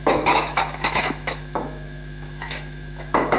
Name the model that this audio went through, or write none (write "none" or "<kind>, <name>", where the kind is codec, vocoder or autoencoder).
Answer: autoencoder, DAC-VAE